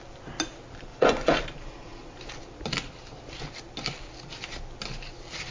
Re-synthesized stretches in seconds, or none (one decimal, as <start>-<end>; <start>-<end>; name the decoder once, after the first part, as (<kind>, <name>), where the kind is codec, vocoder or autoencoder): 0.9-1.4 (vocoder, Vocos)